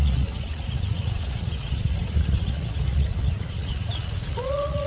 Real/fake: fake